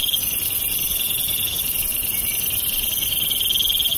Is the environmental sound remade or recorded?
recorded